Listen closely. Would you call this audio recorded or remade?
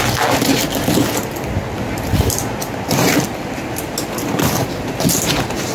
recorded